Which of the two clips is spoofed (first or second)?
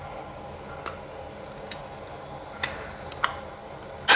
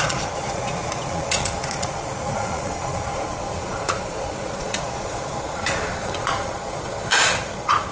second